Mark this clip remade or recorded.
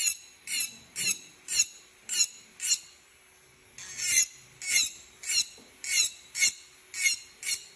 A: recorded